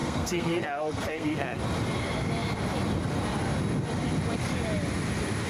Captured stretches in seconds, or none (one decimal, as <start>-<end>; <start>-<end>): 1.6-5.5

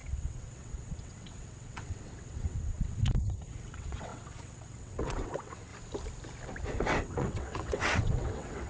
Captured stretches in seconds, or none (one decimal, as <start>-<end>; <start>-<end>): 5.7-6.7

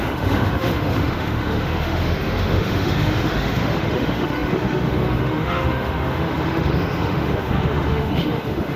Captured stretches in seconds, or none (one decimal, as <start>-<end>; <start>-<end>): none

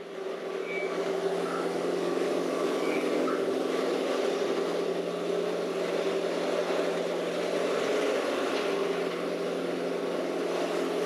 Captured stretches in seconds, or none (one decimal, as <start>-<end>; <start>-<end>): 0.0-0.6; 3.3-11.1

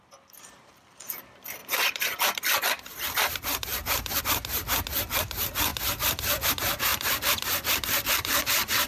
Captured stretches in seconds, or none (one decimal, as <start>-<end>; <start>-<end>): 0.0-1.6; 4.2-5.7; 6.5-6.9

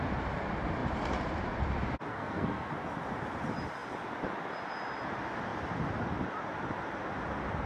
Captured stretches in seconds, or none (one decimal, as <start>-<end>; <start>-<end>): 0.0-2.1; 2.7-7.7

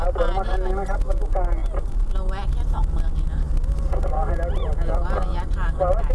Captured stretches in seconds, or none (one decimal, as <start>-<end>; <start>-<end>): 0.0-6.1

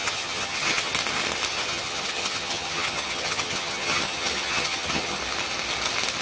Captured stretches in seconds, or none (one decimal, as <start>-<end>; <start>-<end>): 0.9-1.5; 5.2-6.2